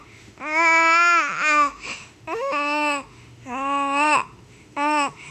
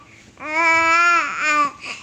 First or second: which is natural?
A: second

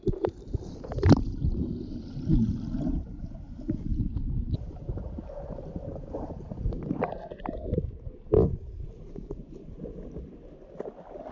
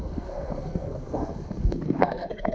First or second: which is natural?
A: first